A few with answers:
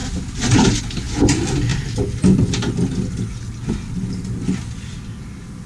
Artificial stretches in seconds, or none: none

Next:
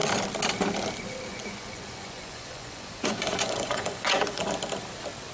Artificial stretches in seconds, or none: 1.3-4.5 (vocoder, Vocos)

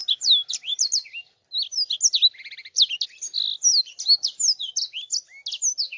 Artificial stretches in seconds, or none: none